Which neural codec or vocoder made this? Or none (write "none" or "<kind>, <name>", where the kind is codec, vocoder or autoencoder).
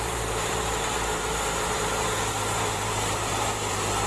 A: vocoder, BigVGAN v2